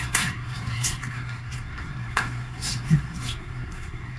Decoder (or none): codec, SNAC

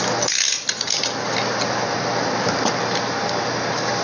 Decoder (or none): none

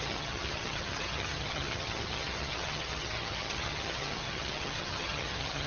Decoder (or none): vocoder, HiFi-GAN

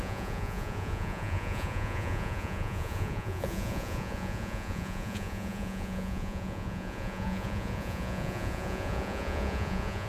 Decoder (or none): vocoder, Vocos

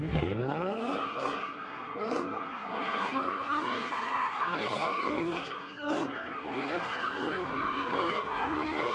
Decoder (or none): codec, SNAC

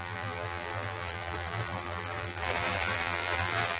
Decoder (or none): vocoder, BigVGAN v2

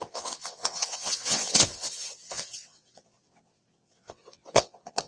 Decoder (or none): vocoder, WaveNeXt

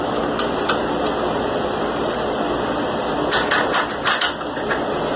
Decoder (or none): none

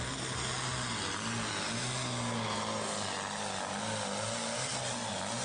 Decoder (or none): none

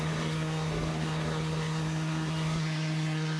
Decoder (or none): codec, SNAC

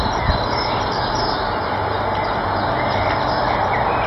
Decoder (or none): none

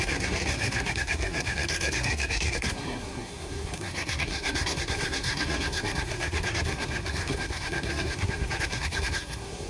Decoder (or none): codec, SNAC